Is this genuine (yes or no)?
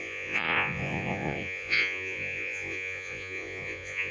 no